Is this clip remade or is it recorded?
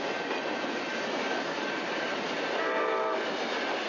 recorded